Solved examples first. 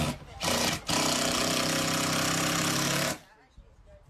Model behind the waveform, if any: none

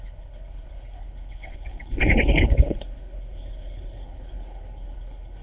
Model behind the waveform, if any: codec, HILCodec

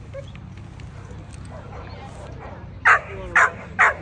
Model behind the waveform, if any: none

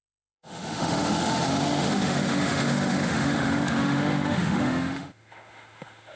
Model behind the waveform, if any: autoencoder, DAC-VAE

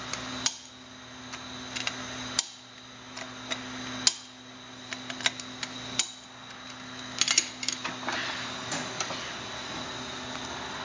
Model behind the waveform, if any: none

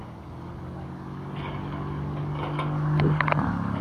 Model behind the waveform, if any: codec, DAC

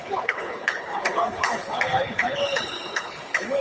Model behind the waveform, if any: codec, HILCodec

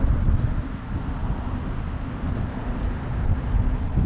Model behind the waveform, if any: none